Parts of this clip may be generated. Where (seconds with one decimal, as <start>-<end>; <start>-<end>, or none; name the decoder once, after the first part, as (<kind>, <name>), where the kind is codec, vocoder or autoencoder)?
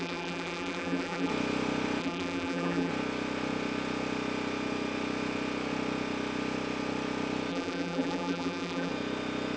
0.0-1.3 (vocoder, BigVGAN v2); 2.0-2.9; 7.5-8.9